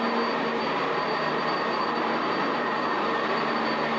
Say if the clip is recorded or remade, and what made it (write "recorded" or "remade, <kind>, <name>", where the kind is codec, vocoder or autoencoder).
remade, vocoder, BigVGAN v2